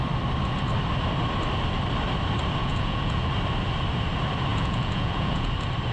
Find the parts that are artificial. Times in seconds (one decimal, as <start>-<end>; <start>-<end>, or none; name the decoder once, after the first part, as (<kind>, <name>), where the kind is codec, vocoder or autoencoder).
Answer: 2.6-3.3 (vocoder, Vocos); 4.5-5.5